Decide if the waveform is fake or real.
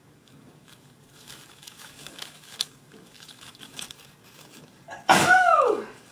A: fake